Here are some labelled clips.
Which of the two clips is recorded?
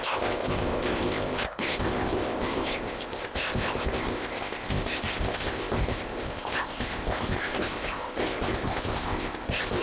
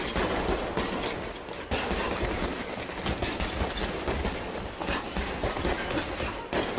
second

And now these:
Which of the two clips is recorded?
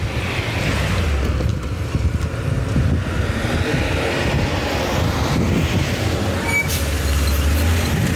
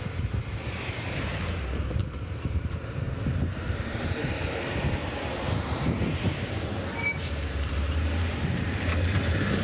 first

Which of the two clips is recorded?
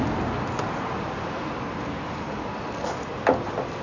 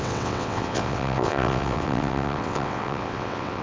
first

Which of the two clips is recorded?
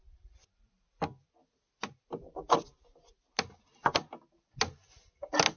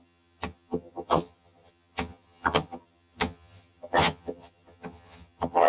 first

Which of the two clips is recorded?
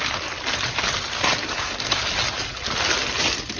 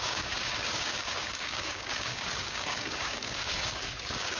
first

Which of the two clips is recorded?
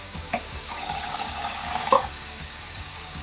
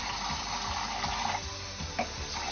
second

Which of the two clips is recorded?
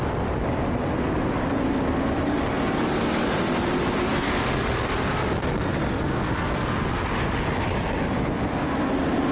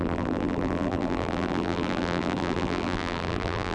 first